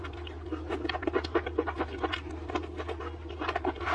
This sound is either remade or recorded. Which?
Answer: recorded